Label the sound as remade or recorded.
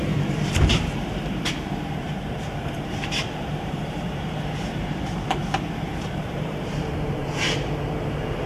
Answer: remade